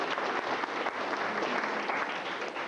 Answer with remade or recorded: recorded